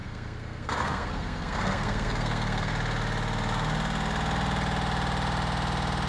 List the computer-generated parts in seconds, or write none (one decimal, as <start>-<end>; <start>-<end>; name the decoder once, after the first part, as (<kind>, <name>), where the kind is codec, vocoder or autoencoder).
0.0-2.7 (codec, SNAC)